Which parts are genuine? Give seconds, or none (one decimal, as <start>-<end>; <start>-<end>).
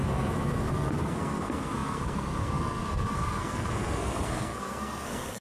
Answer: none